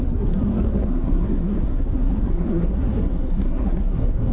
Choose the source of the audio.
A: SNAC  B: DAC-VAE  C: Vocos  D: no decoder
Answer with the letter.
A